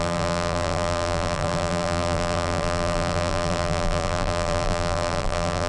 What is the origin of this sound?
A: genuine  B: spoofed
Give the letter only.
B